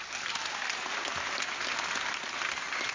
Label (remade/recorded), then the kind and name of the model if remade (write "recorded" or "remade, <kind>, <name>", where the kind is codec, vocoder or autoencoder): recorded